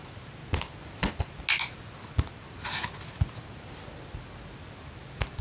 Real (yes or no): yes